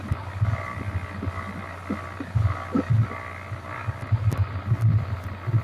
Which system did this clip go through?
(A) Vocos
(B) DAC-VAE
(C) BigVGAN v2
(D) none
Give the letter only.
D